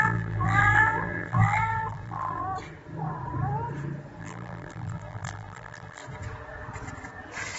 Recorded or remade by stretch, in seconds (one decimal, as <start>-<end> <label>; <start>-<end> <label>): 0.0-2.4 remade; 2.4-4.2 recorded; 4.2-6.0 remade; 6.0-7.6 recorded